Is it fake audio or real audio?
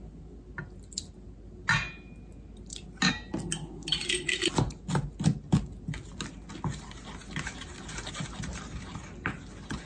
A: real